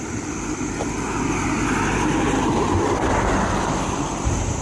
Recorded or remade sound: recorded